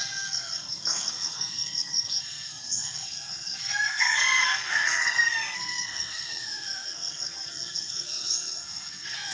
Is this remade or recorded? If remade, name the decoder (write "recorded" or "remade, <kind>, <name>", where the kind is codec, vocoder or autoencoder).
remade, codec, SNAC